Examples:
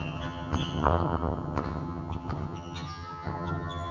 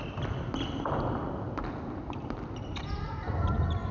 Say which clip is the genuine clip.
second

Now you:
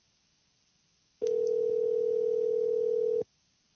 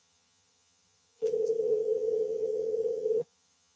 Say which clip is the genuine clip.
first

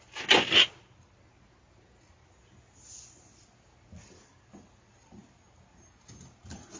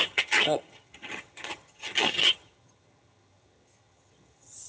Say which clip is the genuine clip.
first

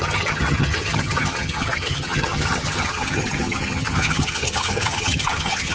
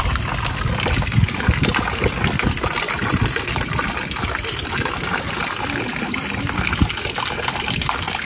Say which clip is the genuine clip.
second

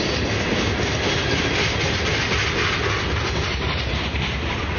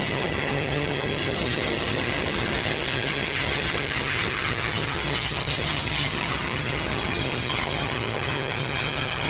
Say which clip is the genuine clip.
first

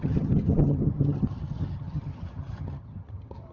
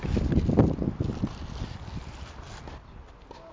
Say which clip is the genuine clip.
second